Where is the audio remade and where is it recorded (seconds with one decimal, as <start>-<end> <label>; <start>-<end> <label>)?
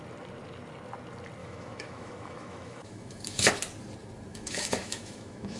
0.0-1.4 recorded; 1.4-3.5 remade; 3.5-4.3 recorded; 4.3-5.6 remade